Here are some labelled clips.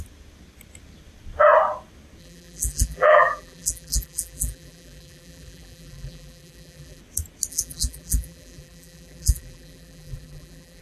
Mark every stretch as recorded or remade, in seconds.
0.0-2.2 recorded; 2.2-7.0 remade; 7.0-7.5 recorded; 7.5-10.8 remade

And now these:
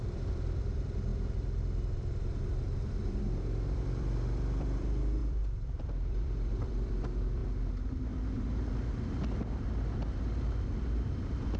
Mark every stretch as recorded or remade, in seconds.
0.0-7.4 remade; 7.4-10.8 recorded; 10.8-11.6 remade

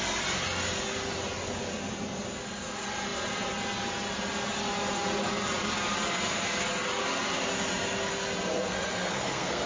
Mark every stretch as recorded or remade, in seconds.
0.0-8.5 recorded; 8.5-9.7 remade

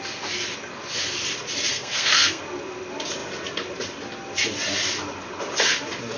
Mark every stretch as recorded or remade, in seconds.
0.0-1.7 recorded; 1.7-2.4 remade; 2.4-6.2 recorded

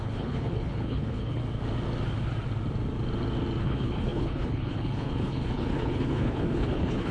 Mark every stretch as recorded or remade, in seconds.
0.0-1.4 remade; 1.4-3.6 recorded; 3.6-7.1 remade

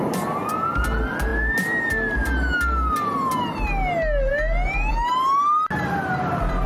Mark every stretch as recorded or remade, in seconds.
0.0-6.7 recorded

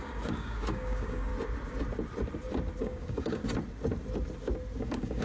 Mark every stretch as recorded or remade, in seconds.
0.0-1.3 remade; 1.3-2.8 recorded; 2.8-3.4 remade; 3.4-4.8 recorded; 4.8-5.2 remade

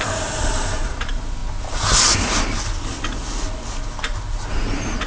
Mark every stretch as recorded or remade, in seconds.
0.0-1.4 remade; 1.4-4.5 recorded; 4.5-5.1 remade